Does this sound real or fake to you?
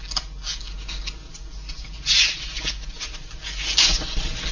real